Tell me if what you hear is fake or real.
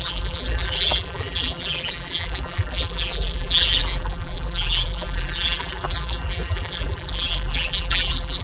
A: fake